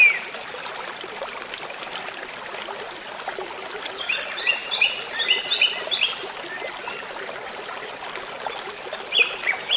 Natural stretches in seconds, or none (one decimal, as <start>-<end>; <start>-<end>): 4.6-9.8